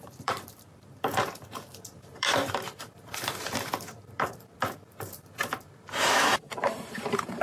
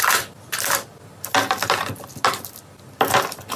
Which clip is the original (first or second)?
second